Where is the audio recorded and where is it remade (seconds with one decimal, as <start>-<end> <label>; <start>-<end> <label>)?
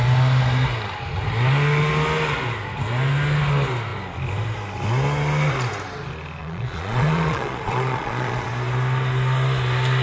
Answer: 0.0-6.4 recorded; 6.4-8.5 remade; 8.5-10.0 recorded